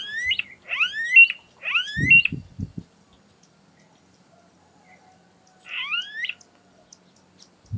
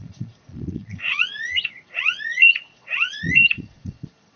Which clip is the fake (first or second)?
second